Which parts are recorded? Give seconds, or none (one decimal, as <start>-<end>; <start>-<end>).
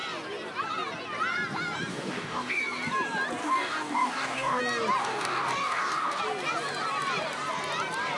0.0-1.9; 2.6-3.4; 4.6-5.0; 6.2-8.2